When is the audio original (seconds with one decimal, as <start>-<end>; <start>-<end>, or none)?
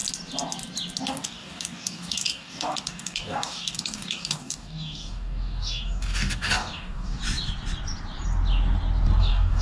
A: 0.0-1.0; 7.2-9.2